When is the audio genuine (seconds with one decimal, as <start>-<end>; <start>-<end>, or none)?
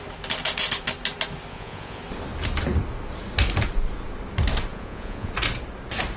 0.0-1.5; 2.0-4.7; 5.3-6.2